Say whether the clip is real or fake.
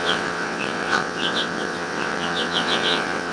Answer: fake